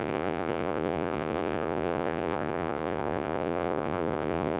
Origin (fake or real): fake